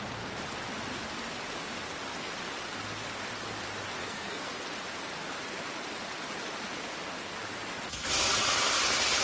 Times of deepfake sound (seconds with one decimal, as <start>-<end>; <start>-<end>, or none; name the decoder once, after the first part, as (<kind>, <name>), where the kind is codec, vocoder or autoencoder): 4.0-4.5 (codec, SNAC)